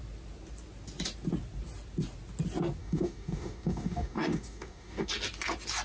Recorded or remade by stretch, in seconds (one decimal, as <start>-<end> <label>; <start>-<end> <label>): 0.0-2.8 recorded; 2.8-5.1 remade; 5.1-5.8 recorded